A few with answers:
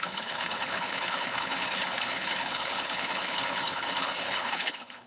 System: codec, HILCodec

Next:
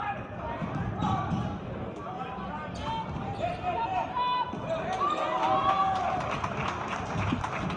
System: none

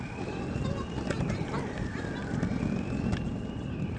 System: none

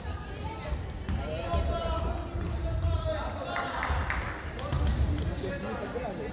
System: none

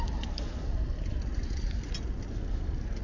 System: none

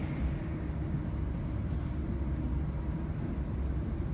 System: none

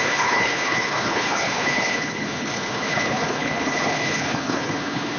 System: codec, HILCodec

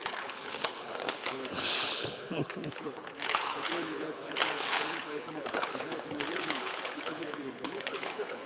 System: codec, HILCodec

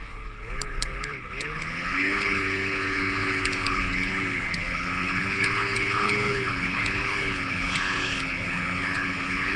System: codec, HILCodec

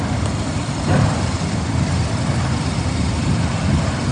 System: none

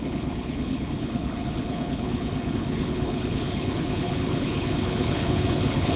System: codec, HILCodec